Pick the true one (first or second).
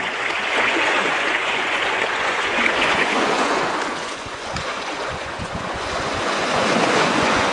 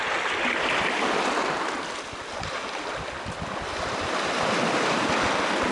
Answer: second